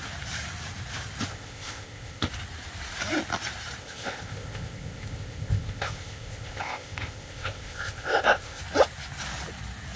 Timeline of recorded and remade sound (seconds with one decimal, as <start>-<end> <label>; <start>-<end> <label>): 0.0-1.3 recorded; 1.3-2.3 remade; 2.3-3.8 recorded; 3.8-8.6 remade; 8.6-10.0 recorded